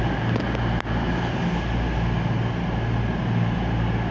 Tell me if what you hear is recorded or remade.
recorded